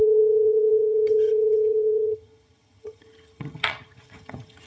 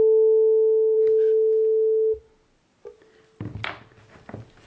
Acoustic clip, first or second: second